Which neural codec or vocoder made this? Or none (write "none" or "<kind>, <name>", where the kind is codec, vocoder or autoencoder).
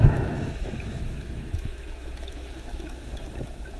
autoencoder, DAC-VAE